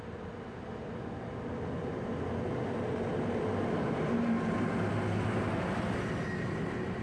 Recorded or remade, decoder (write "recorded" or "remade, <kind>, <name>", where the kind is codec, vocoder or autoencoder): recorded